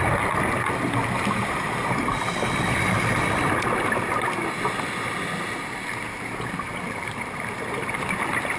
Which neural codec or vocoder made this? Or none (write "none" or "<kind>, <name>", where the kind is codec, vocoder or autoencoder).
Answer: none